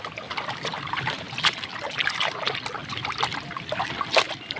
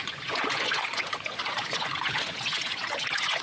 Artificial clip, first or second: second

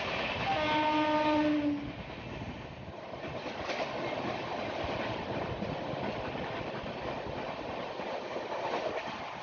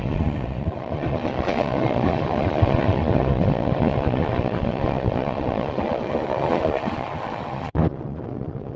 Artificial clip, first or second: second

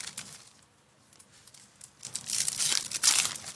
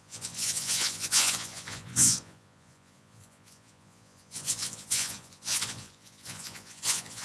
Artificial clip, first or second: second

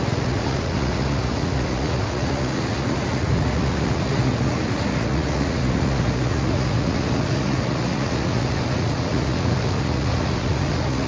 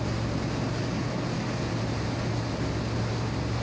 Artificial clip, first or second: first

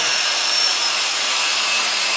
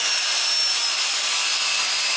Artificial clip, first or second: first